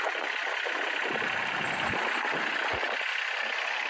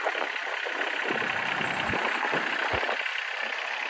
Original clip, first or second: first